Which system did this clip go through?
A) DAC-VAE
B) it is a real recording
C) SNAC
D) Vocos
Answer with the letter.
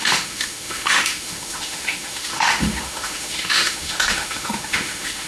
A